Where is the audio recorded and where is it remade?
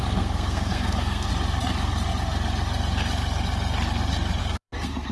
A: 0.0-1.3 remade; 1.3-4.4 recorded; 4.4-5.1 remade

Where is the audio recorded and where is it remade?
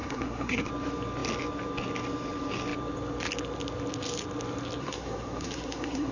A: 0.0-0.7 remade; 0.7-4.8 recorded; 4.8-6.1 remade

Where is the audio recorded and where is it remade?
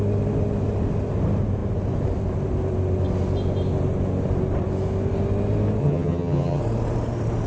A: 0.0-5.8 recorded; 5.8-6.6 remade; 6.6-7.5 recorded